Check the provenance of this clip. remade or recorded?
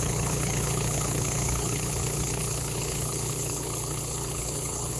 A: remade